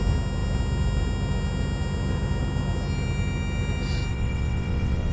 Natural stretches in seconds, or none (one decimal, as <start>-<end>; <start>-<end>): 0.0-4.1